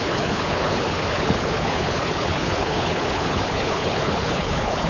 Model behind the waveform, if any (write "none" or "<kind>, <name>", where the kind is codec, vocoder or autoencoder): codec, HILCodec